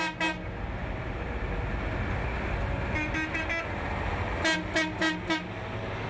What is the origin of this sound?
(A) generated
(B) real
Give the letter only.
B